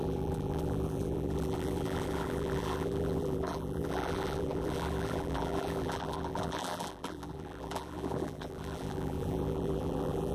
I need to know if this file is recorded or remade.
remade